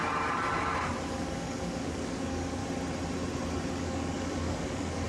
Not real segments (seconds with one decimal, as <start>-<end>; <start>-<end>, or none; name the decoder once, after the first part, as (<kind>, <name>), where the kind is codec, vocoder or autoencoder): 1.1-2.6 (codec, DAC); 3.7-5.1